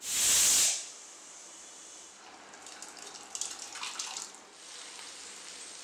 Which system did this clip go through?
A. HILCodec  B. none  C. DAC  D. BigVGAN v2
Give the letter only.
B